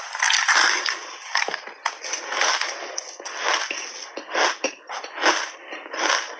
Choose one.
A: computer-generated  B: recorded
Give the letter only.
B